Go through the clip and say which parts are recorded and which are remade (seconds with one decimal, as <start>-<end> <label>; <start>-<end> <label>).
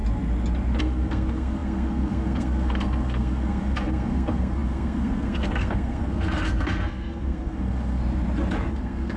0.0-0.8 recorded; 0.8-8.0 remade; 8.0-8.7 recorded; 8.7-9.2 remade